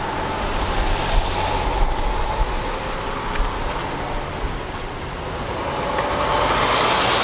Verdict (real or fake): real